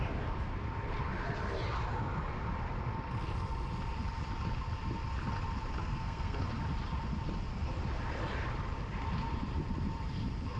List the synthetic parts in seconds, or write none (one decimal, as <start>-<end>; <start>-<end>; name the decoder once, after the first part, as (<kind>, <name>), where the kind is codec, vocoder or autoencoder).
5.8-6.4 (codec, SNAC)